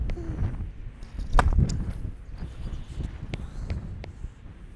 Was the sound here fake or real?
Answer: real